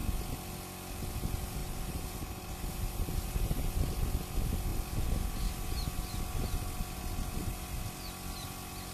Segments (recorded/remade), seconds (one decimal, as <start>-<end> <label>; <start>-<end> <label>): 0.0-1.6 recorded; 1.6-3.1 remade; 3.1-8.9 recorded